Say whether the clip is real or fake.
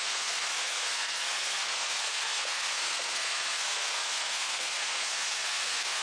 fake